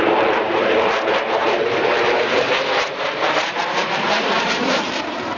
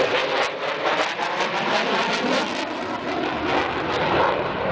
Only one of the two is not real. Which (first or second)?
first